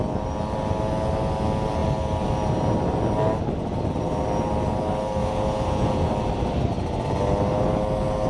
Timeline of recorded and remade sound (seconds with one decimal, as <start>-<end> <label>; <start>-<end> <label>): 0.0-5.2 recorded; 5.2-6.1 remade; 6.1-8.3 recorded